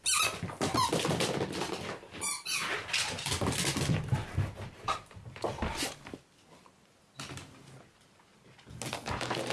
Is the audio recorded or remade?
recorded